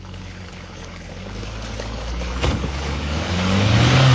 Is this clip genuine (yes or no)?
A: no